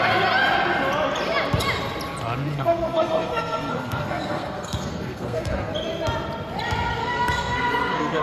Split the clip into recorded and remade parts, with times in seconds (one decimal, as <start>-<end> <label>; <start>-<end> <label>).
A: 0.0-2.5 recorded; 2.5-5.7 remade; 5.7-7.0 recorded; 7.0-8.2 remade